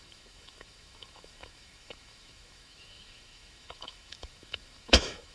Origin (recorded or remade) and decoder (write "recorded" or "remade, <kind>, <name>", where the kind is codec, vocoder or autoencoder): remade, autoencoder, DAC-VAE